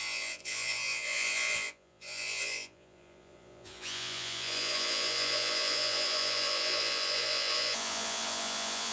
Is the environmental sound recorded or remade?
remade